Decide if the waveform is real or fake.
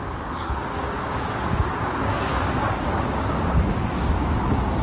fake